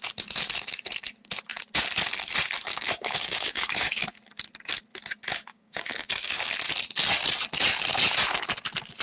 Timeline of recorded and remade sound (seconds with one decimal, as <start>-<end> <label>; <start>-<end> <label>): 0.0-2.7 recorded; 2.7-4.0 remade; 4.0-5.5 recorded; 5.5-6.5 remade; 6.5-9.0 recorded